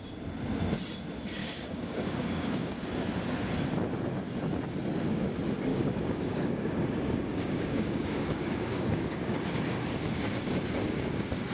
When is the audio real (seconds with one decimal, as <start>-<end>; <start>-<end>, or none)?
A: 0.0-1.4; 2.7-5.7; 10.6-11.5